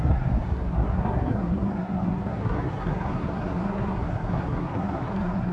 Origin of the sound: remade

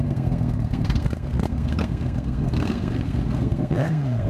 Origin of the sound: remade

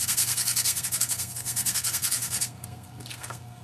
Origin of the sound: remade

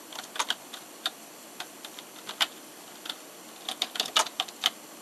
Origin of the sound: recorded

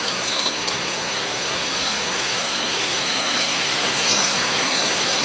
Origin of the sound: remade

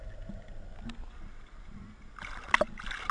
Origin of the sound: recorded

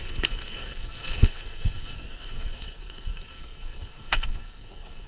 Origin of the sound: remade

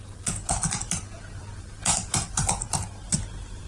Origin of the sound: recorded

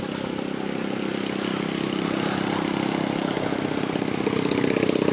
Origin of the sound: recorded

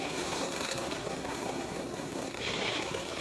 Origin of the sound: remade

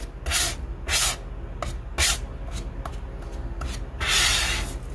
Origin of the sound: recorded